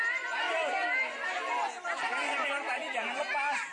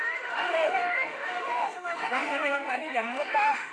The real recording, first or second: first